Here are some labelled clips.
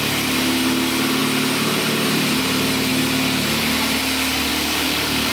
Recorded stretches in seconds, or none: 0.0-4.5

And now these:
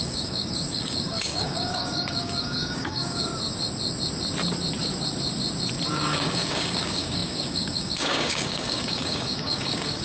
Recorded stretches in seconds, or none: 3.3-5.9